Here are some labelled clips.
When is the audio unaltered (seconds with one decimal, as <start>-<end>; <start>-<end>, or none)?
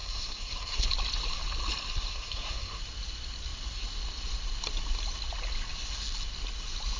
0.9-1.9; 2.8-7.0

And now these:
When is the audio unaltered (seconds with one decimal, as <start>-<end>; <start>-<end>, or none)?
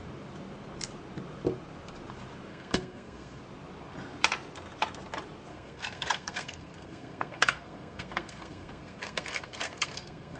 0.0-2.5; 3.4-5.5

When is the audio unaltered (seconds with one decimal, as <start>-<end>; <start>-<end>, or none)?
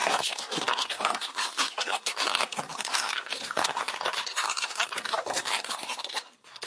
none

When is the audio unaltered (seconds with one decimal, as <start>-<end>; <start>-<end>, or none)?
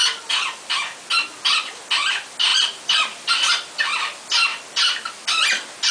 0.0-5.9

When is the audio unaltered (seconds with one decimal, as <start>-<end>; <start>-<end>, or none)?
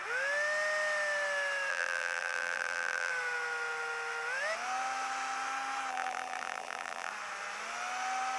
0.0-1.7; 3.1-5.9; 7.1-8.4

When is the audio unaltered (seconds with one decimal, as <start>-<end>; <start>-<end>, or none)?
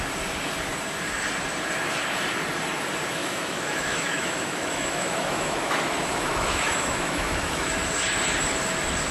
0.0-3.2; 7.7-9.1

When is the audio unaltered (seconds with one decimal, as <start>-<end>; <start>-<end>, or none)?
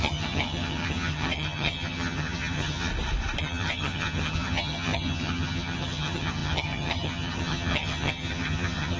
2.9-3.4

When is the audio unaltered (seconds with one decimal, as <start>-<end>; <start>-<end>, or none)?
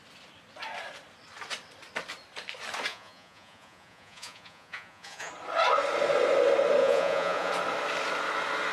0.0-2.9; 5.3-6.8; 7.5-8.7